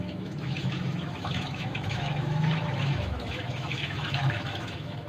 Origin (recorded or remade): remade